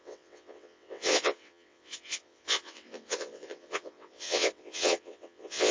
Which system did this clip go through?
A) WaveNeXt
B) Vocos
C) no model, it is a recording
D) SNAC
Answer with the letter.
A